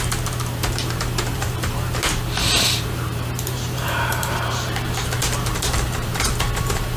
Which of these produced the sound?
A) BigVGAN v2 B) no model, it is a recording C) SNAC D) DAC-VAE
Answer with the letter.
A